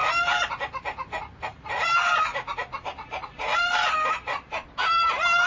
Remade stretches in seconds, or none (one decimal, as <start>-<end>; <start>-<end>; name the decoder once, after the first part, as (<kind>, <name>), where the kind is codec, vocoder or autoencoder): 1.9-2.3 (vocoder, BigVGAN v2); 3.1-5.5